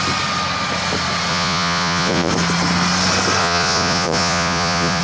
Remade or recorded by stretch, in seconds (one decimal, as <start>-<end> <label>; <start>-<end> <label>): 0.0-1.3 recorded; 1.3-2.3 remade; 2.3-3.4 recorded; 3.4-5.0 remade